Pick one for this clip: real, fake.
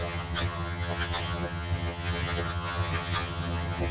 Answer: fake